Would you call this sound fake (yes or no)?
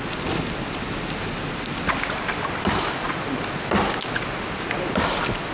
no